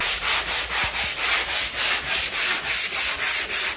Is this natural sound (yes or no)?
yes